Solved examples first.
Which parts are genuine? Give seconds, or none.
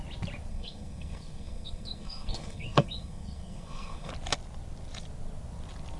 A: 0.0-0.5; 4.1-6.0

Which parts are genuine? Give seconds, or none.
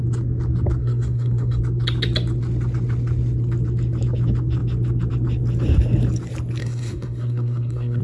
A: 0.0-0.8; 1.6-6.6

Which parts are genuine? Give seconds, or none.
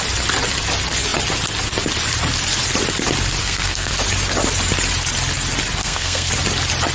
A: 0.0-3.4; 3.9-5.8; 6.3-6.9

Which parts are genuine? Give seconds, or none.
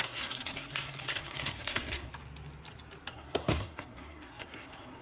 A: 2.1-3.1